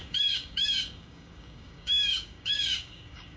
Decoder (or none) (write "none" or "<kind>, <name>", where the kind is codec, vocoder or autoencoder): codec, DAC